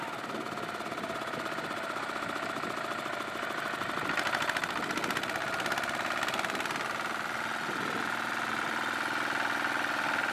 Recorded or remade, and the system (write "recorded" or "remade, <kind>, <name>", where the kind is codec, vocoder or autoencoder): recorded